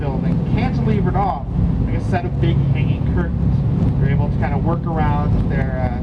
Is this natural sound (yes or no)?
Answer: yes